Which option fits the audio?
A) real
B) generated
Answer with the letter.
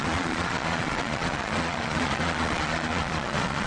B